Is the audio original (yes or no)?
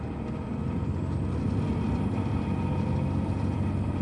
no